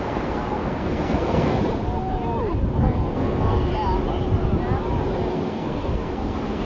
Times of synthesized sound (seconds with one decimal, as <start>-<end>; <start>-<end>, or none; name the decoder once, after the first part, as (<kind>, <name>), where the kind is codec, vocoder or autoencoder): 0.0-1.5 (codec, SNAC); 2.8-3.7; 5.3-6.6